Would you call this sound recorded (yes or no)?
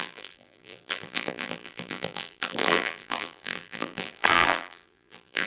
no